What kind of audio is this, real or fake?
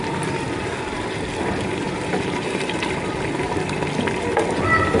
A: real